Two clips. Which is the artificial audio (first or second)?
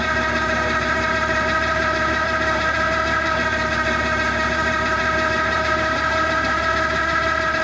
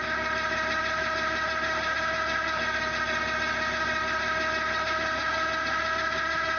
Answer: first